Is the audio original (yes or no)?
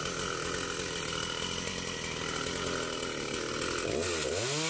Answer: yes